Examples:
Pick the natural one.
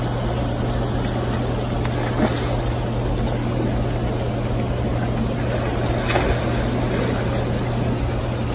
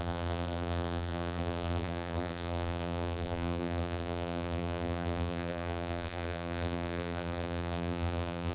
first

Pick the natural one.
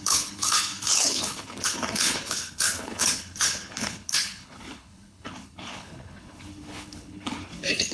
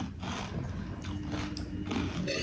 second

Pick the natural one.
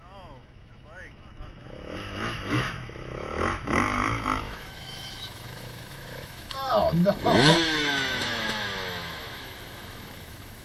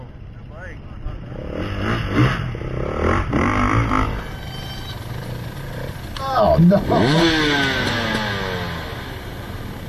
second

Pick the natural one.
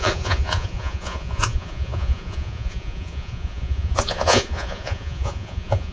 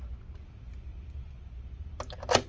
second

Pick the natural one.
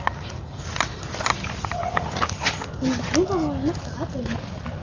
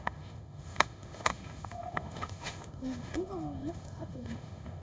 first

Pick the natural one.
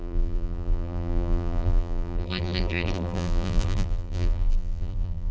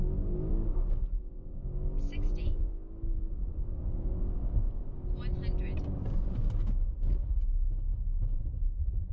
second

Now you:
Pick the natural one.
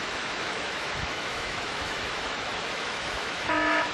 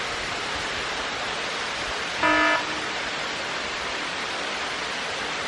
second